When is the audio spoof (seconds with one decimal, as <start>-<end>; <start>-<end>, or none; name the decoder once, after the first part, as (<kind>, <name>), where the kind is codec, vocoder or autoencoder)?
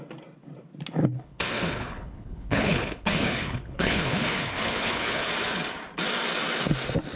1.0-5.3 (codec, HILCodec)